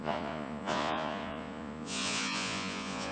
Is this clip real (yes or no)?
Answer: no